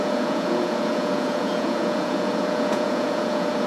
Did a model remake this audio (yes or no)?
yes